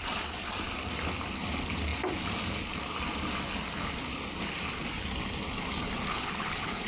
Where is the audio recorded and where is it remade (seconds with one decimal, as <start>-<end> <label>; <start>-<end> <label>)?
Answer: 0.0-6.1 recorded; 6.1-6.9 remade